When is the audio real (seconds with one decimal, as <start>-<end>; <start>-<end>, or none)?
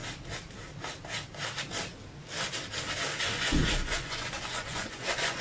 0.0-3.2